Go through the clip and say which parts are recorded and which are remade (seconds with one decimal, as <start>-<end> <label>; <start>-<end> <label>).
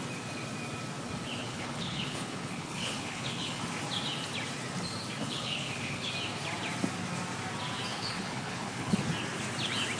0.0-1.4 recorded; 1.4-3.6 remade; 3.6-5.2 recorded; 5.2-6.1 remade; 6.1-7.9 recorded; 7.9-9.0 remade; 9.0-10.0 recorded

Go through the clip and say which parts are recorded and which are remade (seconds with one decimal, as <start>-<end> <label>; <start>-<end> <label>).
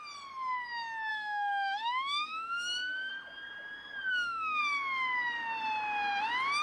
0.0-1.1 recorded; 1.1-3.1 remade; 3.1-4.1 recorded; 4.1-4.6 remade; 4.6-6.6 recorded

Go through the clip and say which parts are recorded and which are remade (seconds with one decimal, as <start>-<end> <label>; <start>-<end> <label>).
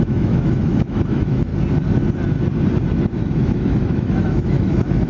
0.0-1.5 remade; 1.5-3.2 recorded; 3.2-5.1 remade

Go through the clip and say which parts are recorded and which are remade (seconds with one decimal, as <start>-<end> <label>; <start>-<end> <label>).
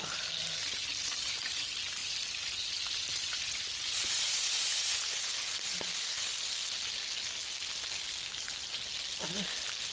0.0-9.9 recorded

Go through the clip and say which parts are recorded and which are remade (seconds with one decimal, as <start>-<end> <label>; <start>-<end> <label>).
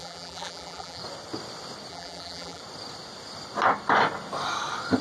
0.0-1.0 remade; 1.0-1.9 recorded; 1.9-2.6 remade; 2.6-5.0 recorded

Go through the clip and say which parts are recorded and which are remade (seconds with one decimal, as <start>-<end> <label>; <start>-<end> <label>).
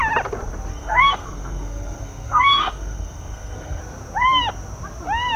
0.0-0.7 recorded; 0.7-3.8 remade; 3.8-5.4 recorded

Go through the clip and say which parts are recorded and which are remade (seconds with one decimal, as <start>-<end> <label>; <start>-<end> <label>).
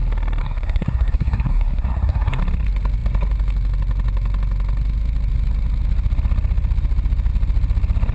0.0-0.4 recorded; 0.4-2.4 remade; 2.4-8.1 recorded